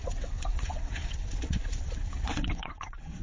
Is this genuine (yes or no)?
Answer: no